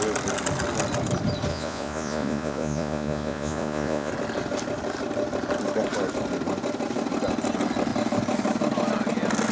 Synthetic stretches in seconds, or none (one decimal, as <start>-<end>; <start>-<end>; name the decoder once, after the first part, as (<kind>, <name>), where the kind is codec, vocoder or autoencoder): 1.5-4.1 (vocoder, Vocos)